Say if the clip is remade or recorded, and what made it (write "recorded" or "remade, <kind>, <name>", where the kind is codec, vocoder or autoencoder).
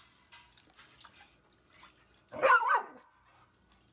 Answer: recorded